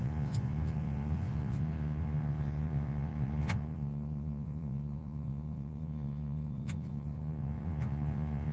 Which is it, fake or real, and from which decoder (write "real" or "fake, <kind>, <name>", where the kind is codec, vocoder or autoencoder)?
fake, vocoder, Vocos